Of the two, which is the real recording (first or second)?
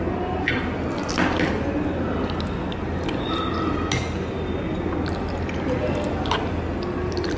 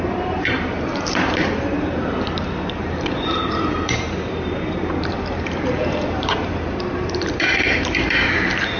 first